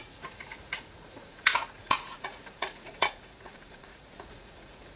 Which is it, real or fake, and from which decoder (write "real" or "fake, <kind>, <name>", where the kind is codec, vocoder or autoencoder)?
fake, vocoder, Vocos